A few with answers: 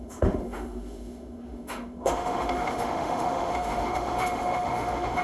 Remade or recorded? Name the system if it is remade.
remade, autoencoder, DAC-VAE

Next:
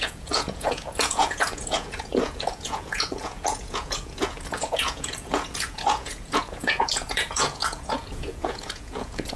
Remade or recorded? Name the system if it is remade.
remade, vocoder, Vocos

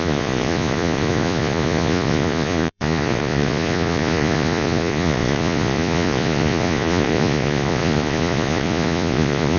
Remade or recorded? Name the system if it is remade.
remade, vocoder, Vocos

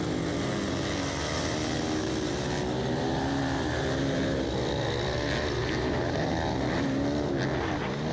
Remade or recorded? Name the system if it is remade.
recorded